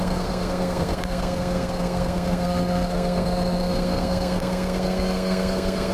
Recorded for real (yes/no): no